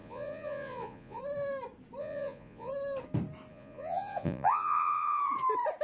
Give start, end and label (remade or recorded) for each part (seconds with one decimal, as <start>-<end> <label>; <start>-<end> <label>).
0.0-1.2 remade; 1.2-2.0 recorded; 2.0-2.7 remade; 2.7-3.5 recorded; 3.5-5.2 remade; 5.2-5.8 recorded